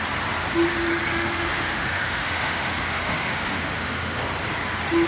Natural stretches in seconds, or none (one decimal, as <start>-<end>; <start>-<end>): 0.0-1.1; 4.2-5.1